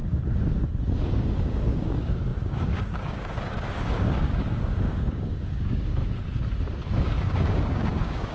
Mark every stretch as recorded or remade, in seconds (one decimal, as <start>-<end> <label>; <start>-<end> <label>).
0.0-1.0 recorded; 1.0-6.0 remade; 6.0-6.9 recorded; 6.9-8.3 remade